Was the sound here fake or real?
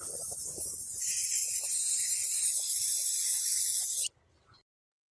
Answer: real